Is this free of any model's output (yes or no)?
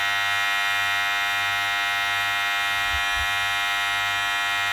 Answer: yes